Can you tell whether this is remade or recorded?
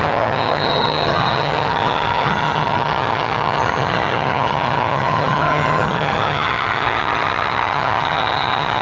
remade